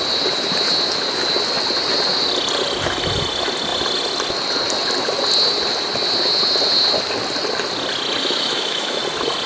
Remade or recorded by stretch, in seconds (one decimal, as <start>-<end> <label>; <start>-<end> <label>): 0.0-8.2 recorded; 8.2-9.0 remade; 9.0-9.5 recorded